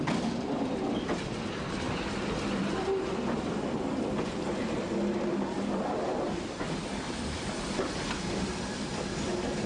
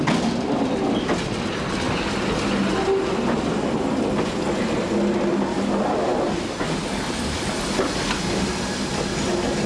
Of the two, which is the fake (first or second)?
first